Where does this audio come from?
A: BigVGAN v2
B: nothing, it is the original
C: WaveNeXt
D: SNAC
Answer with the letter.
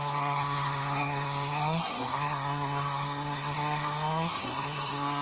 D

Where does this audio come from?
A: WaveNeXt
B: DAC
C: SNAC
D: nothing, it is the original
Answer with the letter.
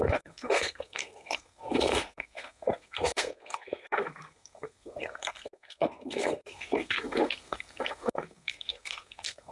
C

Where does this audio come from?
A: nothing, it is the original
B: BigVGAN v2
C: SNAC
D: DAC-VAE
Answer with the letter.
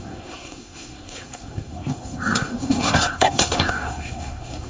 C